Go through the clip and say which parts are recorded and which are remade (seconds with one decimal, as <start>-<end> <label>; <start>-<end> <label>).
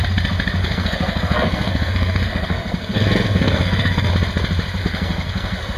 0.0-0.6 recorded; 0.6-4.1 remade; 4.1-4.8 recorded; 4.8-5.8 remade